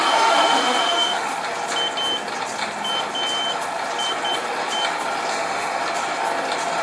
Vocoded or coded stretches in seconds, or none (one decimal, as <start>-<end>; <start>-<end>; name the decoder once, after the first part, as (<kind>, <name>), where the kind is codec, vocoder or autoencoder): 0.0-1.3 (autoencoder, DAC-VAE); 5.3-5.8